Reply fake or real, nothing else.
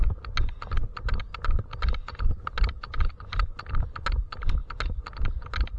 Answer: real